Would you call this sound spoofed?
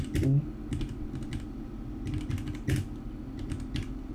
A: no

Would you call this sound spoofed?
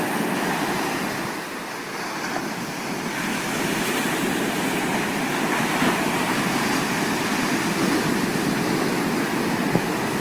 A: no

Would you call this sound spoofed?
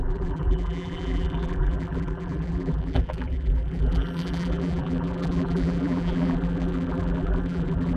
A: yes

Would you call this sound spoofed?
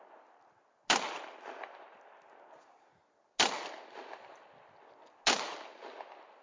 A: no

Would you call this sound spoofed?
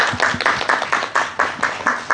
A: no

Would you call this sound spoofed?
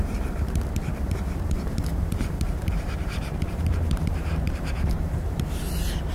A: yes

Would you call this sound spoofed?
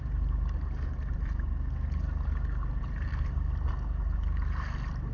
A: no